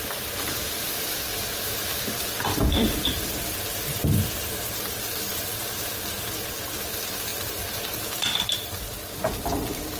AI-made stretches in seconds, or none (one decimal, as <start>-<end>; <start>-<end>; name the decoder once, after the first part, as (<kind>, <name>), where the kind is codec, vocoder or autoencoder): 0.0-10.0 (vocoder, BigVGAN v2)